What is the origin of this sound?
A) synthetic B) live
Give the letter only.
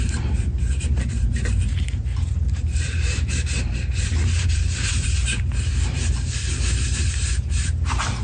A